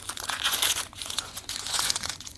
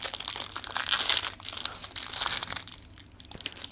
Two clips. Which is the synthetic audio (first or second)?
first